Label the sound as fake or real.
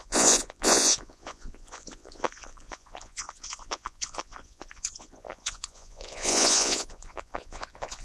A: fake